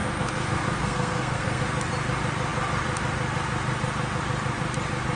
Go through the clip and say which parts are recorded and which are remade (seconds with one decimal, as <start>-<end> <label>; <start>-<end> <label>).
0.0-1.6 remade; 1.6-5.2 recorded